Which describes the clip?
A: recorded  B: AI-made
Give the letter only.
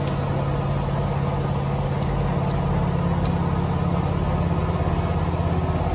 A